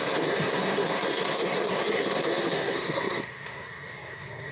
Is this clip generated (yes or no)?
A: yes